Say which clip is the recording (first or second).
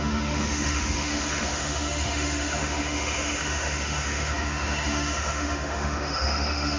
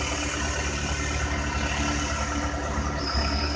second